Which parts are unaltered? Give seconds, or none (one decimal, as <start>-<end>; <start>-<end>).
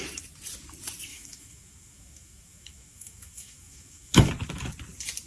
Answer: 0.0-1.1; 4.3-5.3